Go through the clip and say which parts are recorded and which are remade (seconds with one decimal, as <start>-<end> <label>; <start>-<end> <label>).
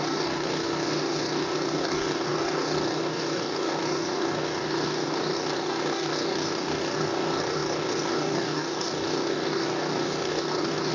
0.0-10.9 remade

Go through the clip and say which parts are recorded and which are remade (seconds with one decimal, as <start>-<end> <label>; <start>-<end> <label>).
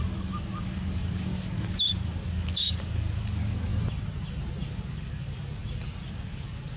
0.0-3.7 remade; 3.7-4.7 recorded; 4.7-5.6 remade; 5.6-6.1 recorded; 6.1-6.8 remade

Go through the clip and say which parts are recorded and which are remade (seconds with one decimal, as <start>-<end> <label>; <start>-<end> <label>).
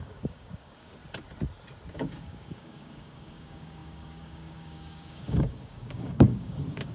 0.0-1.0 remade; 1.0-1.9 recorded; 1.9-6.9 remade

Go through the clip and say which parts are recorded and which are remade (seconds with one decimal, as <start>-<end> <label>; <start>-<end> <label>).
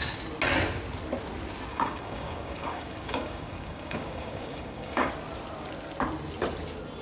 0.0-1.7 recorded; 1.7-5.1 remade; 5.1-7.0 recorded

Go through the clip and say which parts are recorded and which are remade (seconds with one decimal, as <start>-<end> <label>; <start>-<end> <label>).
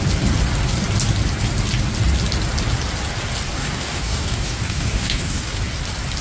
0.0-3.5 recorded; 3.5-5.6 remade; 5.6-6.2 recorded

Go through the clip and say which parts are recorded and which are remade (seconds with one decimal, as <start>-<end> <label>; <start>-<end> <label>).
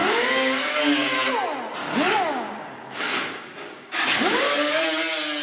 0.0-0.8 remade; 0.8-1.8 recorded; 1.8-4.7 remade; 4.7-5.4 recorded